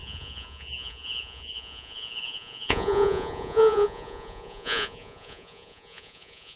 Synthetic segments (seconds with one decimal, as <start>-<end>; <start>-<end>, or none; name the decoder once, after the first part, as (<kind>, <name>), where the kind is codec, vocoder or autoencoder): 0.0-6.6 (vocoder, Vocos)